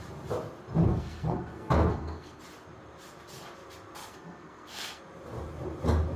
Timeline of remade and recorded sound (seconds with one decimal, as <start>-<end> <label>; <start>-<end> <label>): 0.0-0.9 recorded; 0.9-2.4 remade; 2.4-4.0 recorded; 4.0-5.0 remade; 5.0-6.2 recorded